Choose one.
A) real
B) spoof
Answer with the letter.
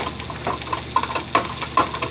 A